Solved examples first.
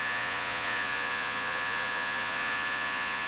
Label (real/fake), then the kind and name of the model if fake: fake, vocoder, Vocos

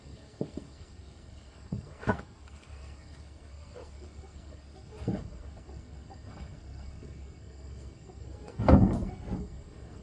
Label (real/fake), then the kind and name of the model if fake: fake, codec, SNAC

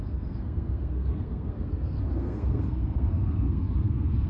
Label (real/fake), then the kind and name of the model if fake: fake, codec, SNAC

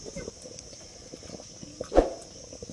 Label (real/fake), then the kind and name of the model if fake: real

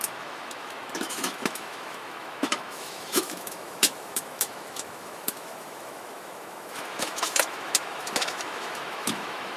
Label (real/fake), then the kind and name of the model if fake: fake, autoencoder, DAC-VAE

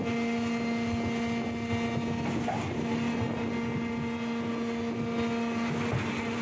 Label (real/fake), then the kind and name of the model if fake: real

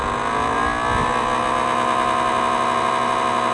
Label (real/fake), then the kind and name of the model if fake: real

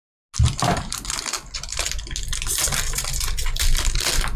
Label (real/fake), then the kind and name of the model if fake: real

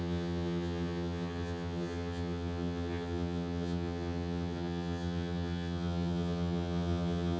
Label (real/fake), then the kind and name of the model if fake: fake, vocoder, HiFi-GAN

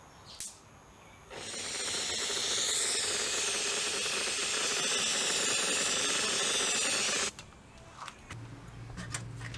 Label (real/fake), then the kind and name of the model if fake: real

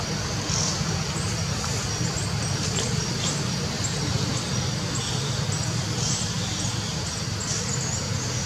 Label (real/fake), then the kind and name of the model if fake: real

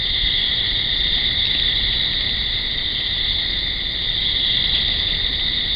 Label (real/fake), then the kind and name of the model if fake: real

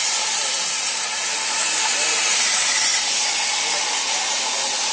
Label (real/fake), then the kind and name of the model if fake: real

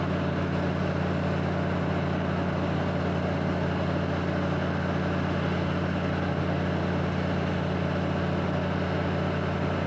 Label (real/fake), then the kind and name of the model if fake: real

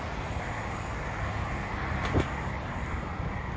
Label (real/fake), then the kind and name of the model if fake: real